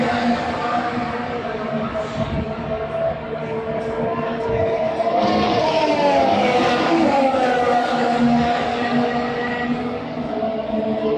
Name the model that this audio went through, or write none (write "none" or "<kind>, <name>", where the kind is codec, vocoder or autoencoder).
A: codec, DAC